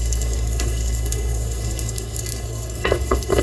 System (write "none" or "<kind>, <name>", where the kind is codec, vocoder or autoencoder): codec, SNAC